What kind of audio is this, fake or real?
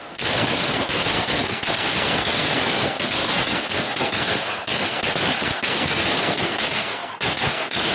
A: fake